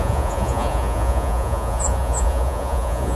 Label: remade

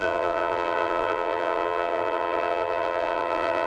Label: remade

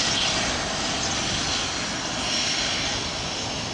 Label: recorded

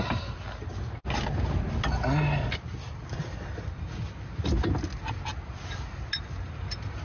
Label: recorded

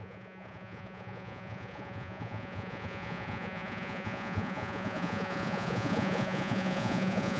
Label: remade